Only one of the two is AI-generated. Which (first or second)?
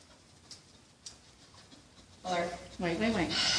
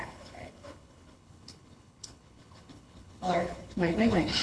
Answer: second